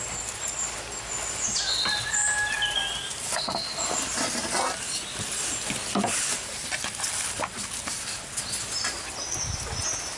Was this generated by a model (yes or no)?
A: no